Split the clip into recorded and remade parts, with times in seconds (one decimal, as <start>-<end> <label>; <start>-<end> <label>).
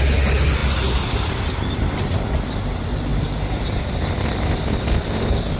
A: 0.0-5.6 recorded